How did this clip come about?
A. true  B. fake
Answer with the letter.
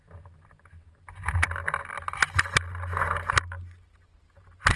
A